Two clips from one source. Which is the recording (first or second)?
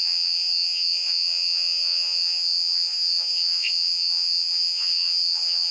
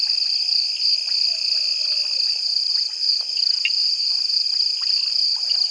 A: second